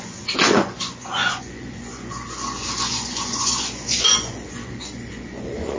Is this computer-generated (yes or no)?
yes